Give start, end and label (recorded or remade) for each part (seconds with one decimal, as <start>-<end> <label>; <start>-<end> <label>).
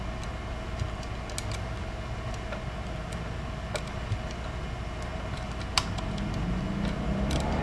0.0-7.6 recorded